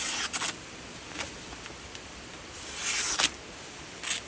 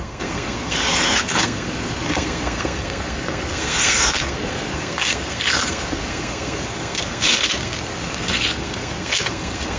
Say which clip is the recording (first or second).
first